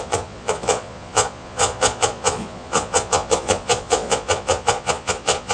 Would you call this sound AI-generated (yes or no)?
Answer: yes